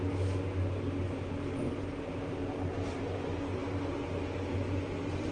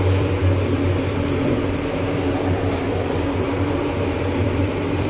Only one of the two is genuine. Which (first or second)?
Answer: first